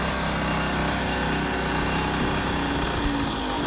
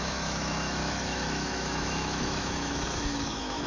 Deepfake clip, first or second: second